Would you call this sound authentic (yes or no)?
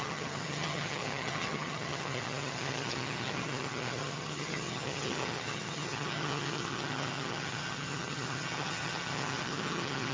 no